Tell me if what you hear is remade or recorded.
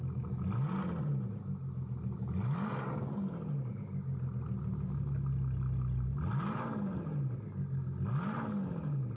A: recorded